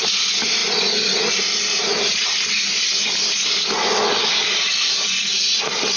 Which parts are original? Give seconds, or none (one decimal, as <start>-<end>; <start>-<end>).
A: 0.0-6.0